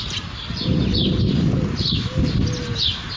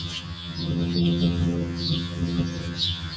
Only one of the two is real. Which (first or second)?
first